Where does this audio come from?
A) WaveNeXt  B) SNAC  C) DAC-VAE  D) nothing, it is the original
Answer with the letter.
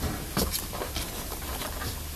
D